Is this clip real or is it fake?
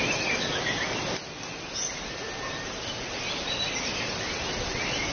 real